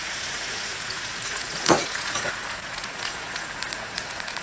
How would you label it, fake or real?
fake